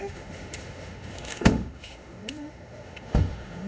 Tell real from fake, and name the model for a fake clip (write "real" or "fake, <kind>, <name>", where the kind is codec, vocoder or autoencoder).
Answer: fake, autoencoder, DAC-VAE